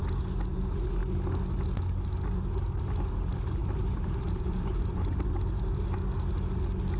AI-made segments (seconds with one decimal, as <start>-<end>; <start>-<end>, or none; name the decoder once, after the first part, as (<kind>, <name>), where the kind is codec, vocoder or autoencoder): 3.6-5.7 (vocoder, BigVGAN v2)